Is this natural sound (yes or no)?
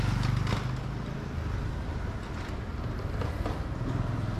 yes